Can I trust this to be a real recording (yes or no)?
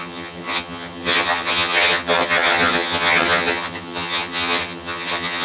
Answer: no